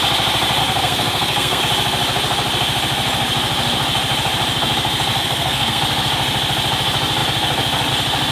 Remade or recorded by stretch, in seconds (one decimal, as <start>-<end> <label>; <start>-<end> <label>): 0.0-0.6 recorded; 0.6-1.6 remade; 1.6-5.1 recorded; 5.1-5.8 remade; 5.8-8.3 recorded